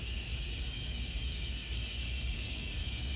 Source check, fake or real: fake